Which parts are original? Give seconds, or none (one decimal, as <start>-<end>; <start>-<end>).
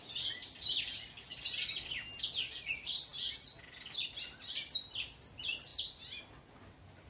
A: 0.0-7.1